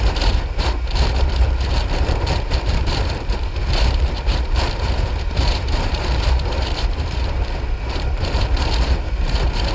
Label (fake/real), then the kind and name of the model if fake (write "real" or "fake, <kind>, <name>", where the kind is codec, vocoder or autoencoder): fake, vocoder, BigVGAN v2